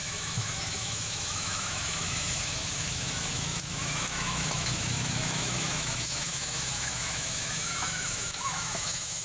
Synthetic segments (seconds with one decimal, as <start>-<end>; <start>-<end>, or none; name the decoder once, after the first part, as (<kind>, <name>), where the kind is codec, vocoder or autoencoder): 0.0-9.2 (autoencoder, DAC-VAE)